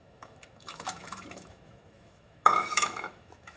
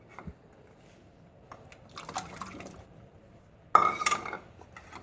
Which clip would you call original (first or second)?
second